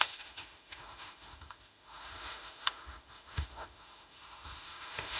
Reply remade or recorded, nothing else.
remade